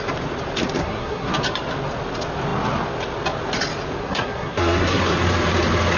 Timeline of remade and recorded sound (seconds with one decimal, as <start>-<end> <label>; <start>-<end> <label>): 0.0-0.8 recorded; 0.8-1.3 remade; 1.3-4.0 recorded; 4.0-5.0 remade; 5.0-6.0 recorded